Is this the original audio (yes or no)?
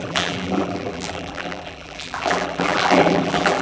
no